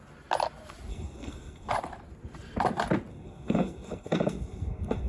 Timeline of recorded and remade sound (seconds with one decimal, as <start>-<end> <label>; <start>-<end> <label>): 0.0-0.9 recorded; 0.9-1.7 remade; 1.7-3.1 recorded; 3.1-5.1 remade